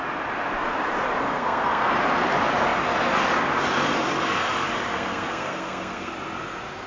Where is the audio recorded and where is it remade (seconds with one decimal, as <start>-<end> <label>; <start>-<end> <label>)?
0.0-1.3 recorded; 1.3-1.9 remade; 1.9-4.9 recorded; 4.9-6.1 remade; 6.1-6.9 recorded